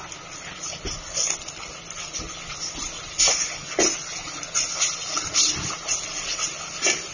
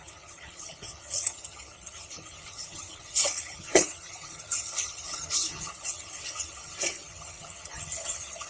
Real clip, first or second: first